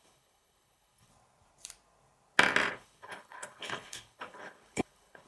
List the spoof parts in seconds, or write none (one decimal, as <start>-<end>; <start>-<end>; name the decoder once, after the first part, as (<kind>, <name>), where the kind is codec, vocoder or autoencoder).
0.0-1.1 (codec, HILCodec); 2.7-5.3